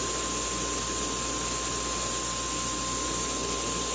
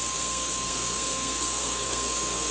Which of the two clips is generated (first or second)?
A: second